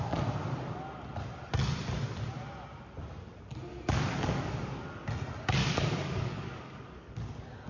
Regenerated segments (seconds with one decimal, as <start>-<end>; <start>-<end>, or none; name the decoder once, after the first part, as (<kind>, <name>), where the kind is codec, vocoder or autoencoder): 3.7-4.8 (codec, DAC); 5.6-7.1